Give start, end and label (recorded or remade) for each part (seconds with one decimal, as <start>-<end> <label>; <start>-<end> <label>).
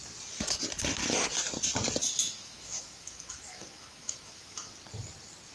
0.0-2.0 recorded; 2.0-4.7 remade; 4.7-5.5 recorded